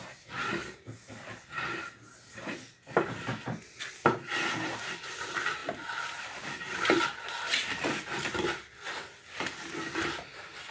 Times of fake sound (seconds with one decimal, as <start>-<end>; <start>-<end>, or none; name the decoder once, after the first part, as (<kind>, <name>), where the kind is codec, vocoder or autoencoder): none